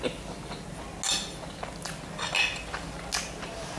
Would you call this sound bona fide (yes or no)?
yes